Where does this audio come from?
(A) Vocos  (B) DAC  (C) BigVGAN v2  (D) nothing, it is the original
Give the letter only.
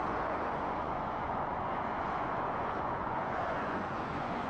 A